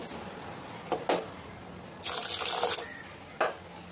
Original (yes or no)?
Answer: yes